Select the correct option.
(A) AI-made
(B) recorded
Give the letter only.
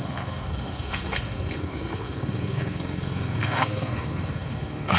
A